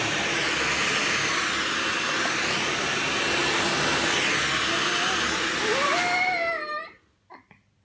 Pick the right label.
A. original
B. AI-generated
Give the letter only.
A